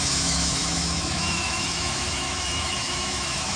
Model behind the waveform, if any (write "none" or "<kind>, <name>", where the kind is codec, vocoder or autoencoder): autoencoder, DAC-VAE